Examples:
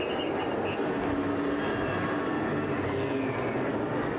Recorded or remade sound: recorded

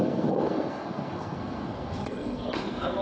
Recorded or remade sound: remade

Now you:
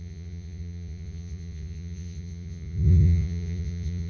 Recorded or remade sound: remade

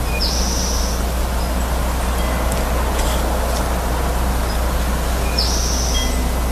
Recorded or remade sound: recorded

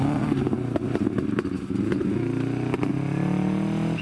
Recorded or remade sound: recorded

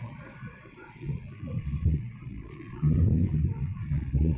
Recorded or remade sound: remade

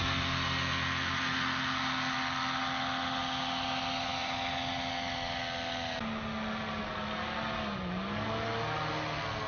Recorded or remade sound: recorded